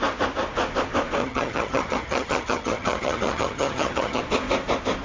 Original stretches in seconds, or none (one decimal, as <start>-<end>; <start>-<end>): 0.0-1.2; 4.2-5.0